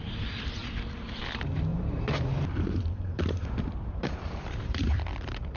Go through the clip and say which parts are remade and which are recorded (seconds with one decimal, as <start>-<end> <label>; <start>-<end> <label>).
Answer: 0.0-0.6 recorded; 0.6-1.2 remade; 1.2-1.7 recorded; 1.7-5.1 remade; 5.1-5.6 recorded

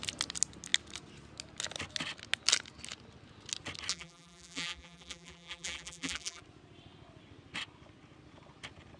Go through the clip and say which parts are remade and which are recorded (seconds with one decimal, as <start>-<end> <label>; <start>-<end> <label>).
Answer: 0.0-3.9 recorded; 3.9-6.4 remade; 6.4-9.0 recorded

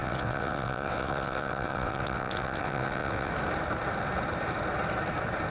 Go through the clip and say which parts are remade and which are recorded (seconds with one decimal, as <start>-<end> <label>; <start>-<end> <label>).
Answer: 0.0-3.3 remade; 3.3-5.5 recorded

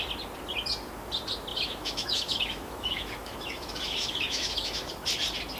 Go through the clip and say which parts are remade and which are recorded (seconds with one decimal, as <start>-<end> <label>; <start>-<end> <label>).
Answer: 0.0-1.5 recorded; 1.5-4.9 remade; 4.9-5.6 recorded

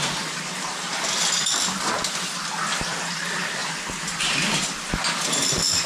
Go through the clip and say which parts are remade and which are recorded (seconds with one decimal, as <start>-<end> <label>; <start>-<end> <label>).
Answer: 0.0-5.9 recorded

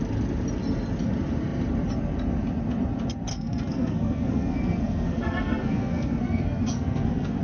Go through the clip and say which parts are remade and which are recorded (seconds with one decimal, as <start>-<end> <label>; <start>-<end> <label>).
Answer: 0.0-3.3 recorded; 3.3-7.4 remade

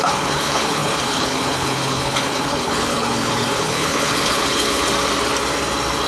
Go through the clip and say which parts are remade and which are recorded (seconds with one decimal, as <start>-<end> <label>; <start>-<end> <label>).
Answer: 0.0-4.8 remade; 4.8-6.1 recorded